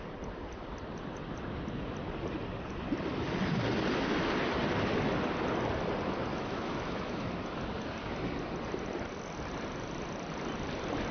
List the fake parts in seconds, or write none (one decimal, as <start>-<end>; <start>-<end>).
6.3-7.3